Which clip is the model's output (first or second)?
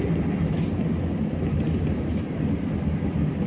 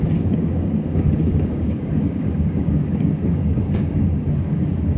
second